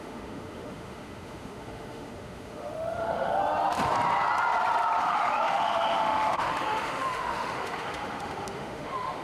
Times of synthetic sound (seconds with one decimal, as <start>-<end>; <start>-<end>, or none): 0.0-3.4; 5.0-9.2